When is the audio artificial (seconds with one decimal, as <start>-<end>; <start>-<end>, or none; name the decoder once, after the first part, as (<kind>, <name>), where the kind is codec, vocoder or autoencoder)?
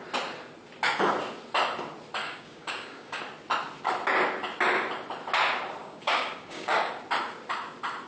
2.2-3.2 (codec, DAC); 5.8-6.9